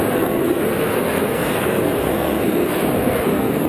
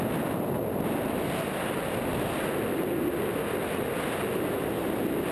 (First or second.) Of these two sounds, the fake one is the first